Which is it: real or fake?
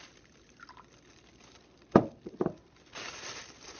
fake